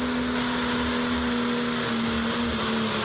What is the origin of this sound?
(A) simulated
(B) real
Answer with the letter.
B